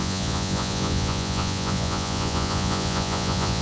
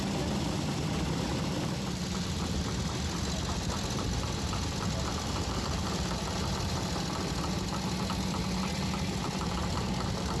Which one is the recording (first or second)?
second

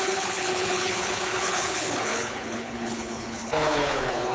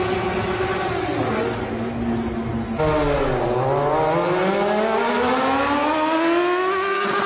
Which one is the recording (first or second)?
second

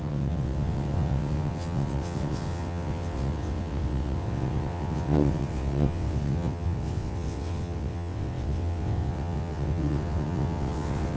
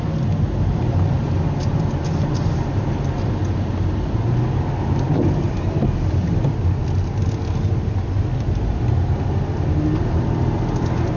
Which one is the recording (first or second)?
second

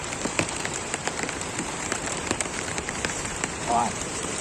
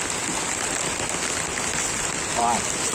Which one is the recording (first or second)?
second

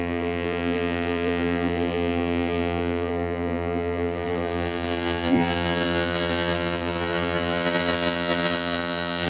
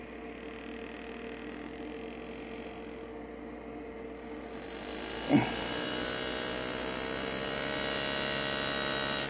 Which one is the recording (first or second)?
second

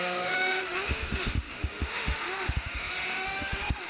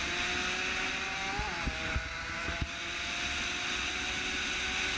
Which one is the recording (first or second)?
second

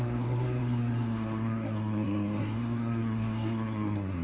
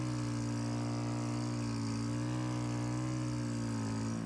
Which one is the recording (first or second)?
second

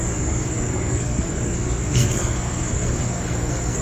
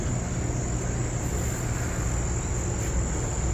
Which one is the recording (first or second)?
second